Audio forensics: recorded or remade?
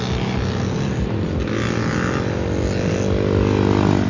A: recorded